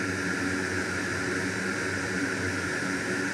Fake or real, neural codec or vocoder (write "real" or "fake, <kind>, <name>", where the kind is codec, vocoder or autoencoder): fake, vocoder, BigVGAN v2